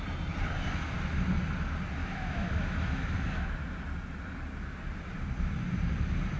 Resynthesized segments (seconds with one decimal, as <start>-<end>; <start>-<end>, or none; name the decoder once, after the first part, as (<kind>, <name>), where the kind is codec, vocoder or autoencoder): 2.0-3.7 (autoencoder, DAC-VAE)